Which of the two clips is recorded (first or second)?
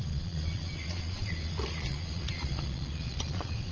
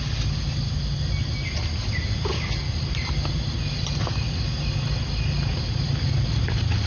second